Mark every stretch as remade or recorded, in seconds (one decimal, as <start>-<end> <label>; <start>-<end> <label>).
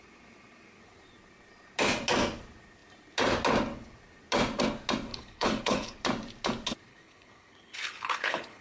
0.0-5.1 recorded; 5.1-6.0 remade; 6.0-6.9 recorded; 6.9-8.6 remade